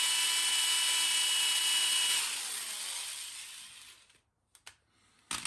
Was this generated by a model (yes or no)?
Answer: no